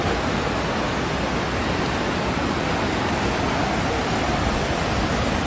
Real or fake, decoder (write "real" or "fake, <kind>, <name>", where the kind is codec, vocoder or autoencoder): real